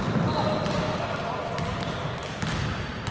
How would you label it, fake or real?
real